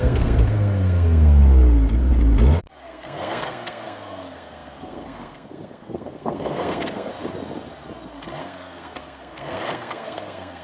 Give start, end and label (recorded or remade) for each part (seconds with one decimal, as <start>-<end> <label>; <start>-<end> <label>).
0.0-1.4 remade; 1.4-2.8 recorded; 2.8-7.1 remade; 7.1-8.4 recorded; 8.4-10.6 remade